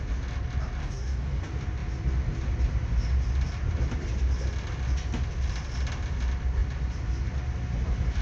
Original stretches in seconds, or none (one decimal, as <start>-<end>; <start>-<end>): 0.0-0.8; 1.4-8.2